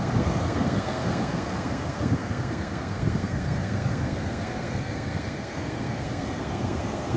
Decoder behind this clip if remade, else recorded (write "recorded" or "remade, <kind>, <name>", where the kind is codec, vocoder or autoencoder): remade, codec, SNAC